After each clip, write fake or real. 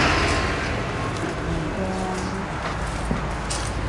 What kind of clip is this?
real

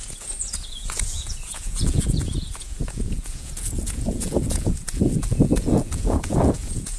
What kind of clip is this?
fake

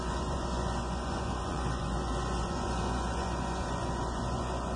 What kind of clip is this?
fake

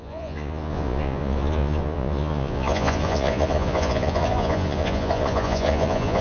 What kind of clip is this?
fake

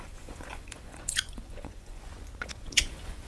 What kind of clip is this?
fake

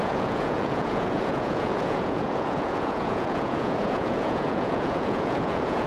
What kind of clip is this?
fake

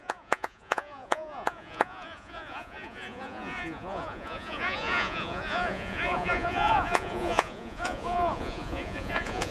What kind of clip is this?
fake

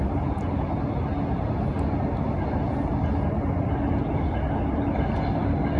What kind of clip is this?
real